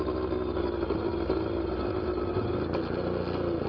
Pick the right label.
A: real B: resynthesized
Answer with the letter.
A